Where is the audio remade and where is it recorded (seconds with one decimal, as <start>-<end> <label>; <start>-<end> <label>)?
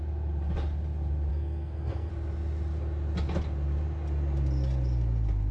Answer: 0.0-1.3 recorded; 1.3-2.1 remade; 2.1-5.5 recorded